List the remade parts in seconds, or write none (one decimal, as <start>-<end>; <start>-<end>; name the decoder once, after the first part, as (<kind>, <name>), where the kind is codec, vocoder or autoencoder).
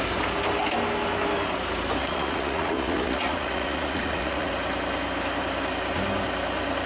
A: 2.0-4.5 (vocoder, Vocos)